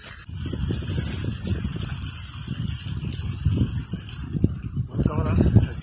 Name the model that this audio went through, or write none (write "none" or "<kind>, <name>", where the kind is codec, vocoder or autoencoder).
none